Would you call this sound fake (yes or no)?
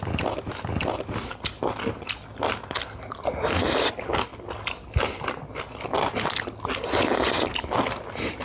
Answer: no